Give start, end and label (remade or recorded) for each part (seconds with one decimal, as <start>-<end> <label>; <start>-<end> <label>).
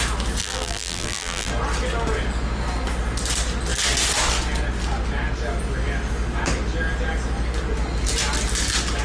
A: 0.0-0.4 recorded; 0.4-1.5 remade; 1.5-9.0 recorded